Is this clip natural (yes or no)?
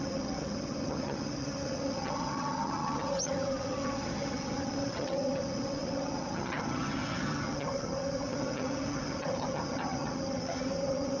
no